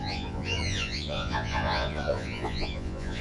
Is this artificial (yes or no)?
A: yes